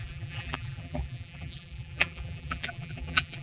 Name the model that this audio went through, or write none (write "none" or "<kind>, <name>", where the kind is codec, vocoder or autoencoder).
vocoder, BigVGAN v2